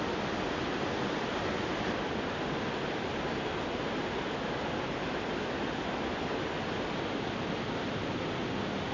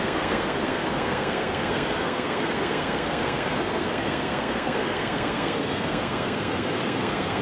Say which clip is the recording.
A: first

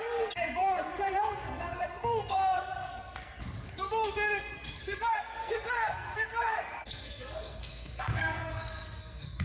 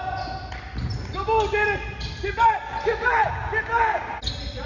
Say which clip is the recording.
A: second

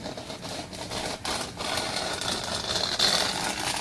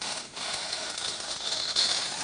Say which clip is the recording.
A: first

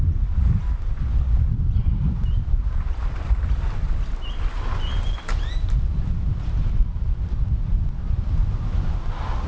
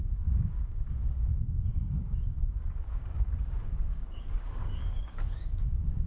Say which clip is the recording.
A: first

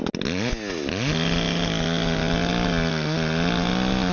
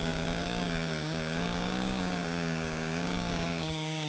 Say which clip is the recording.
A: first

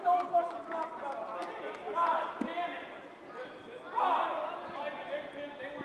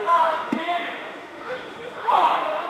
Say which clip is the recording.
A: first